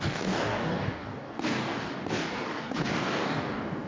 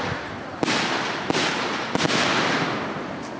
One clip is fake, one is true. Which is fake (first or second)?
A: first